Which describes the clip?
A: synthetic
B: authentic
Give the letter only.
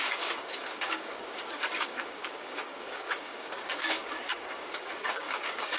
A